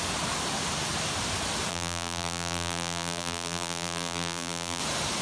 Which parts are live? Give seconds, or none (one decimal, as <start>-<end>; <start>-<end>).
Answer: 0.0-1.7; 4.8-5.2

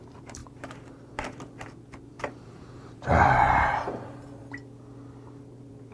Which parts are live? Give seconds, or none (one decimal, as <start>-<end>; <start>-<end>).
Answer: 4.4-5.1

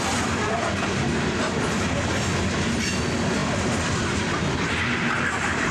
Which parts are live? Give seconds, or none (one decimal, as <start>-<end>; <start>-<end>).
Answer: 0.0-5.7